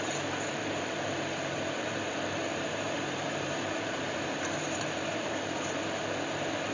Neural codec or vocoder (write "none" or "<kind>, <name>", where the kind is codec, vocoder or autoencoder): vocoder, BigVGAN v2